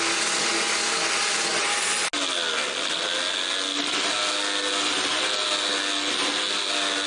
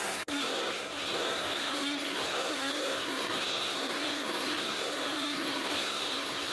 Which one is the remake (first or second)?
second